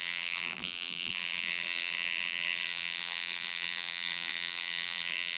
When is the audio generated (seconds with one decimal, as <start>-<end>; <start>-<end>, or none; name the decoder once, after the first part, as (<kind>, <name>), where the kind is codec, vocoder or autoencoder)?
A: 0.0-5.4 (vocoder, BigVGAN v2)